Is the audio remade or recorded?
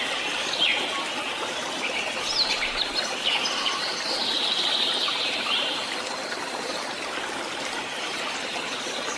recorded